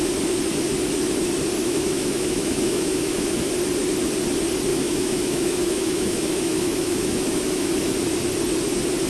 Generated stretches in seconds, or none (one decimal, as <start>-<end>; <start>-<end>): 1.6-3.5; 4.7-7.9